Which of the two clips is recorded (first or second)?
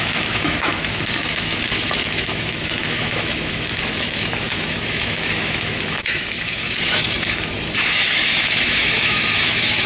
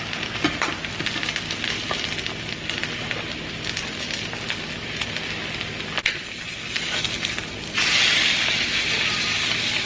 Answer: second